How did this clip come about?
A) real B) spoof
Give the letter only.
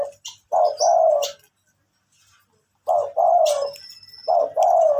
A